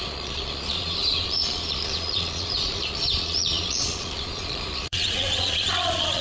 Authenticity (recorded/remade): remade